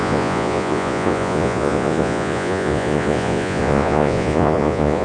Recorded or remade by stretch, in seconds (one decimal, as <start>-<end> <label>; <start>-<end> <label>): 0.0-5.0 remade

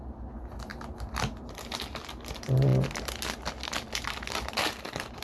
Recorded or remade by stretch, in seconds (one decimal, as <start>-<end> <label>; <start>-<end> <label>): 0.0-5.2 recorded